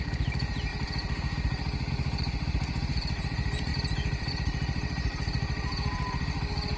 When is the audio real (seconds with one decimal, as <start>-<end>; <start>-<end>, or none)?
0.7-1.9; 3.7-4.3